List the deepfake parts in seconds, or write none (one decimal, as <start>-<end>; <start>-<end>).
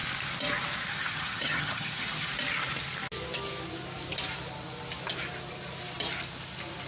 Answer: 0.9-2.3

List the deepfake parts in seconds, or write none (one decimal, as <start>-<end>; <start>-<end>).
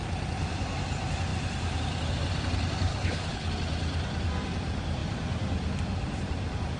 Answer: 2.9-3.5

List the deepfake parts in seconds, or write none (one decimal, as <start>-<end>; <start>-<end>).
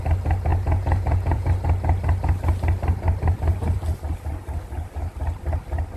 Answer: 0.5-1.5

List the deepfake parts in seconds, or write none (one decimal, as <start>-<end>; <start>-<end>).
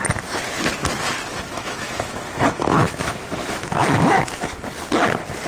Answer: 1.3-4.5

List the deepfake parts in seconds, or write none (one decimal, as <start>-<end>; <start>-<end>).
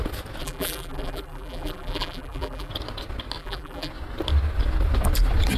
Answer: 0.4-2.7; 3.4-3.9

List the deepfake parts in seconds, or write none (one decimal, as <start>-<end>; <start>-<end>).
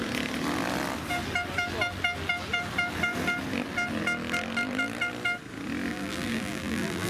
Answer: 5.9-7.1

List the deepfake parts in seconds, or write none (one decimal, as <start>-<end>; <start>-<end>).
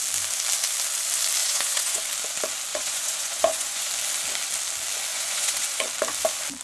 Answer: 1.4-2.0; 2.7-3.9; 5.1-5.8